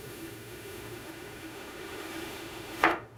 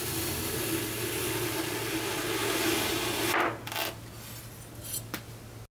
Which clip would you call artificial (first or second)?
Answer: first